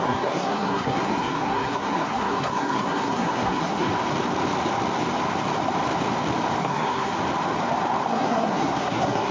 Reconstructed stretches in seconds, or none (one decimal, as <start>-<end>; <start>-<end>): 0.0-3.9; 6.6-7.1; 8.1-9.3